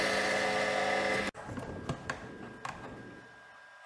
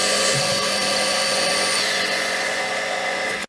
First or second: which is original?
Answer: first